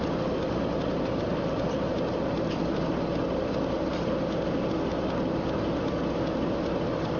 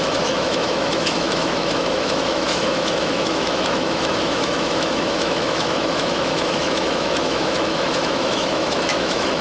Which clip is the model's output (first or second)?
second